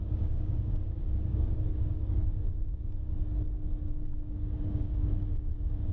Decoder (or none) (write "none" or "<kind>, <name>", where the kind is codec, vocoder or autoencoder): codec, DAC